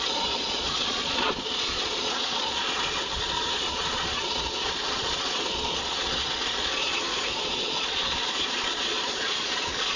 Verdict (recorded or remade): remade